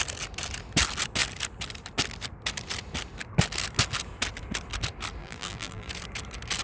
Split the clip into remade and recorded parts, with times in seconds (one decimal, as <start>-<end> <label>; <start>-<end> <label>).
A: 0.0-5.2 recorded; 5.2-5.9 remade; 5.9-6.6 recorded